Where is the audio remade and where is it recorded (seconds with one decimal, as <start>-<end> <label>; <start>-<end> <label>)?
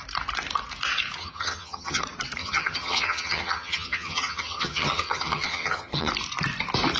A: 0.0-1.2 recorded; 1.2-2.0 remade; 2.0-2.4 recorded; 2.4-6.1 remade; 6.1-7.0 recorded